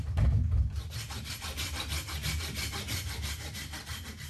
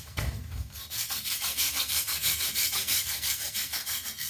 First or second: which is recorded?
first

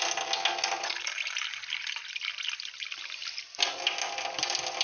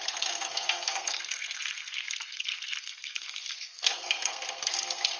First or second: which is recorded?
first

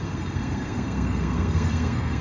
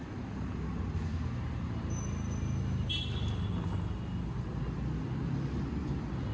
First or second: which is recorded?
second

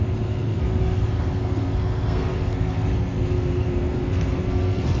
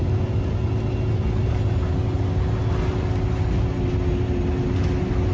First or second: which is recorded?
second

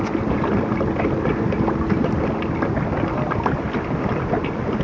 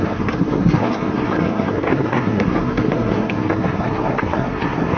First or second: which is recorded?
first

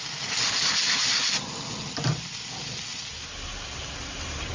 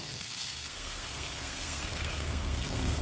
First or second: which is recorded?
first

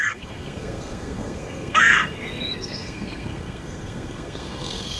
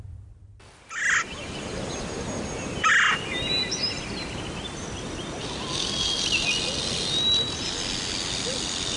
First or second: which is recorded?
second